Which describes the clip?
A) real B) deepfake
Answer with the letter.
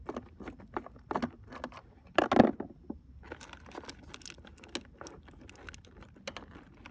A